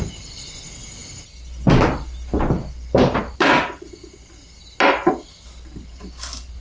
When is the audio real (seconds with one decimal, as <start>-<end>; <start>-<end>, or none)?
0.0-6.6